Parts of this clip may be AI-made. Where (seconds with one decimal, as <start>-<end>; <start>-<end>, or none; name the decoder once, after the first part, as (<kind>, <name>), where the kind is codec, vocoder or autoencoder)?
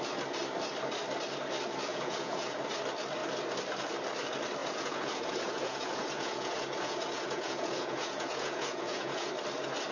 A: 1.9-2.6 (vocoder, Vocos); 4.6-9.3